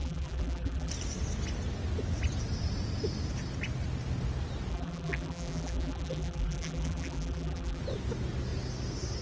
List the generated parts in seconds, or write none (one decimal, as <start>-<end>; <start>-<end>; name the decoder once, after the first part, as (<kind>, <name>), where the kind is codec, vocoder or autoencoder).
0.0-0.9 (vocoder, BigVGAN v2); 4.7-7.8